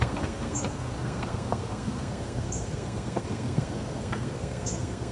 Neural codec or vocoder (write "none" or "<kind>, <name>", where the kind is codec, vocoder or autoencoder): codec, SNAC